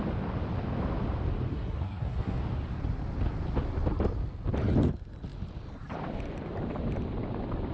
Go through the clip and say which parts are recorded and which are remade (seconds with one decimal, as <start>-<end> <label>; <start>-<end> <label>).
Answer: 0.0-1.5 recorded; 1.5-2.4 remade; 2.4-7.7 recorded